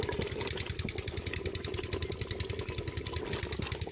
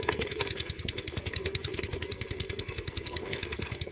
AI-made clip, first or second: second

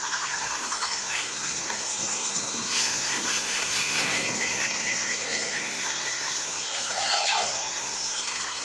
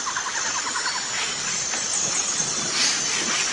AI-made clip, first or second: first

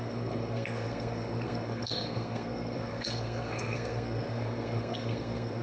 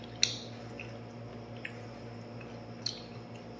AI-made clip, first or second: first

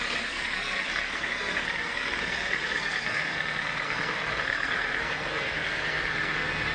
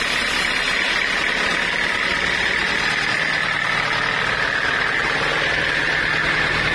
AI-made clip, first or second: first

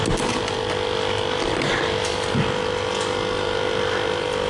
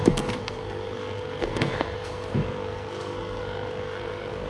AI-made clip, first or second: second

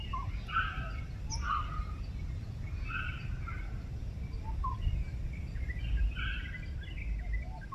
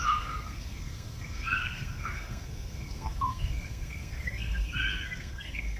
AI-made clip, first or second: second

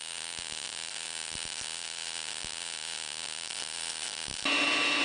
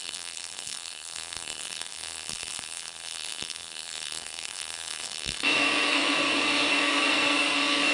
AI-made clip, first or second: second